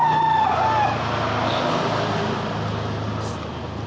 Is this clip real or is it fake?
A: real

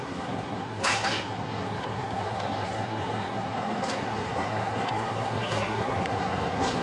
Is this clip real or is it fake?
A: fake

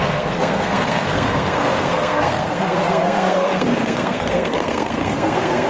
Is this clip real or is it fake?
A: fake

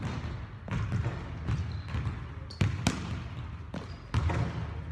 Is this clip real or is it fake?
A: real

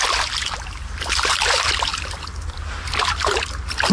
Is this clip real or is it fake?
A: real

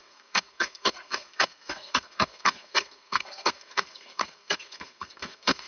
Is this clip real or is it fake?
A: fake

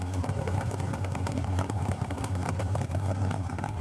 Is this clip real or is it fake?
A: fake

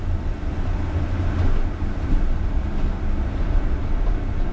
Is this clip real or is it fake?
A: real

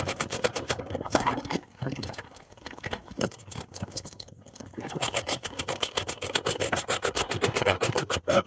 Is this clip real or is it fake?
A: fake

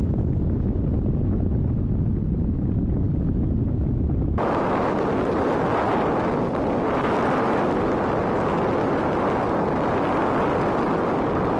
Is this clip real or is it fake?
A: real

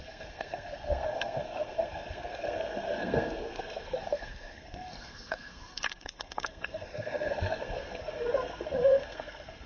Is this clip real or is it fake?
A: fake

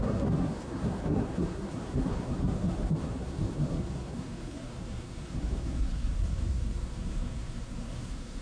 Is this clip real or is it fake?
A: fake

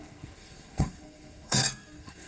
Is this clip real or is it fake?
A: fake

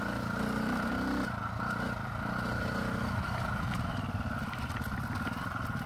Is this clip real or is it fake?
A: real